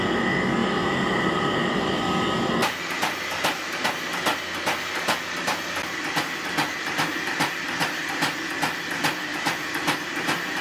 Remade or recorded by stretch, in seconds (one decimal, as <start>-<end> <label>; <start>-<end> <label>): 0.0-0.6 recorded; 0.6-2.0 remade; 2.0-9.3 recorded; 9.3-10.6 remade